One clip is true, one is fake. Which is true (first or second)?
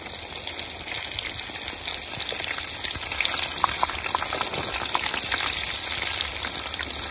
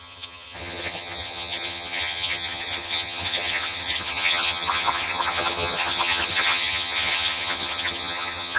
first